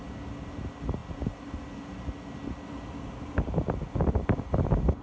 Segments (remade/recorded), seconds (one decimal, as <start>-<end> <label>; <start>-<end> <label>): 0.0-5.0 recorded